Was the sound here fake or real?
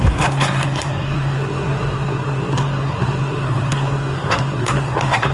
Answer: fake